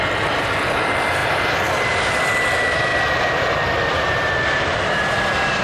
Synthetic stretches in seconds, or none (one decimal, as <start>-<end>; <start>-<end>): 1.2-2.2; 2.9-5.6